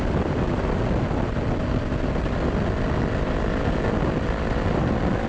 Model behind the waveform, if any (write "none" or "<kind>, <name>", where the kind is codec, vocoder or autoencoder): none